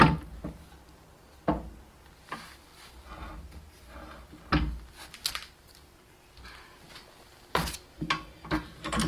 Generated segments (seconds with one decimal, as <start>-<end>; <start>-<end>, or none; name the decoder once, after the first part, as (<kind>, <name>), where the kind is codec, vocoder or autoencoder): none